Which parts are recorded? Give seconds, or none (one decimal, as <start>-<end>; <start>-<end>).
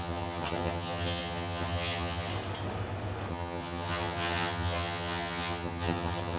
2.3-3.3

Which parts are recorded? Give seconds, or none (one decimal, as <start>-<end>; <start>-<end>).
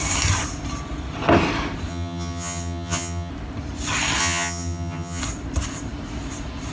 0.0-1.9; 3.3-4.2; 5.2-6.7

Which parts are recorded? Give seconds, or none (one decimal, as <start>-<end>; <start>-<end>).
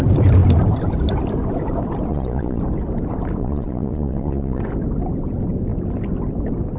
0.0-2.1; 2.6-3.4; 4.6-6.8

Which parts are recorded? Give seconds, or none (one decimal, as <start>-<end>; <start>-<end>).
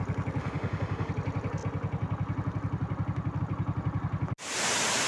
0.0-0.4; 1.1-5.1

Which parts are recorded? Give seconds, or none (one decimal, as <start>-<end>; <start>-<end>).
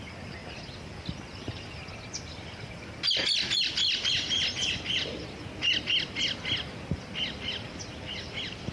0.0-8.7